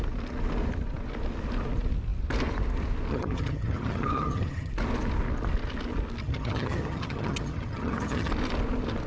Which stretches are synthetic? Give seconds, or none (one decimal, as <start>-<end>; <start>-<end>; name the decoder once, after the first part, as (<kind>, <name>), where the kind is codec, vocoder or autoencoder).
3.1-4.7 (vocoder, HiFi-GAN); 6.2-8.3